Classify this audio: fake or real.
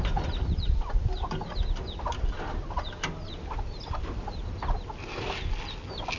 real